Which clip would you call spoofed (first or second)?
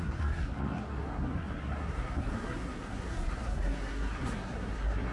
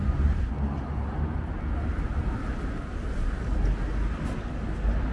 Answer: first